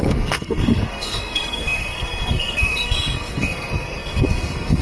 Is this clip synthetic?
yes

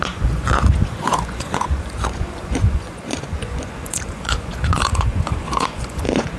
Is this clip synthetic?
yes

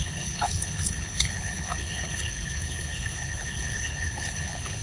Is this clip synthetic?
yes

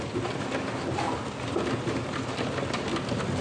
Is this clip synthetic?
no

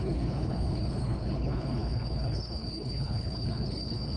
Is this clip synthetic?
yes